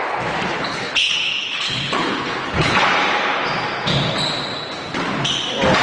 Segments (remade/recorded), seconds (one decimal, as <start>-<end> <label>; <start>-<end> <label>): 0.0-0.5 recorded; 0.5-2.7 remade; 2.7-5.8 recorded